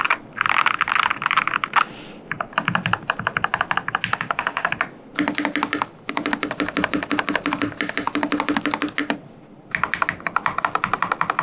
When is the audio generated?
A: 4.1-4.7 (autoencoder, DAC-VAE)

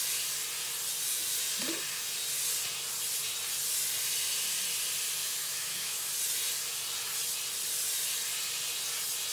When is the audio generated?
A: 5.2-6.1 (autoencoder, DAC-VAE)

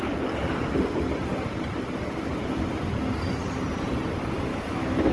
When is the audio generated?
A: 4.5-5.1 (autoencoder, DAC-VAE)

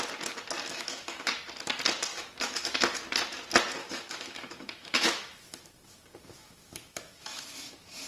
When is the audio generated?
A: 0.7-1.3 (autoencoder, DAC-VAE); 2.1-3.0; 3.8-8.1

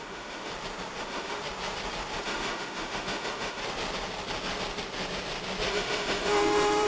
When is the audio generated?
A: 0.0-0.5 (autoencoder, DAC-VAE); 1.0-1.4; 2.2-3.6; 5.7-6.9

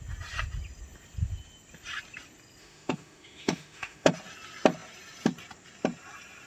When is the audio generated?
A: 2.6-4.1 (autoencoder, DAC-VAE)